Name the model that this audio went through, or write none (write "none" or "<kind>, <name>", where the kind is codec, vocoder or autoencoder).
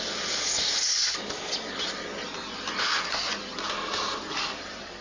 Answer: none